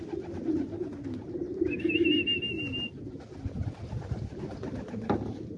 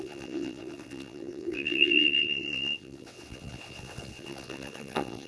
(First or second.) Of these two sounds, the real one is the first